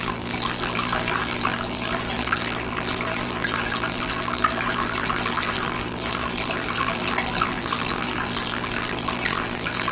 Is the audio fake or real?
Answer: fake